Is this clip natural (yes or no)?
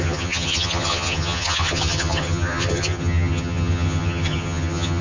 no